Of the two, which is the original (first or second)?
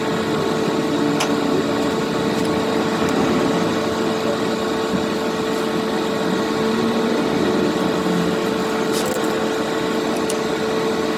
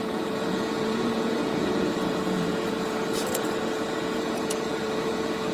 first